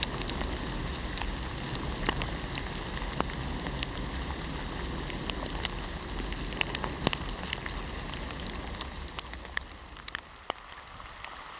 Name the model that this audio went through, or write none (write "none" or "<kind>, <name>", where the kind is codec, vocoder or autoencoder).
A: none